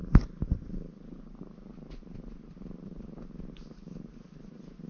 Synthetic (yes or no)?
no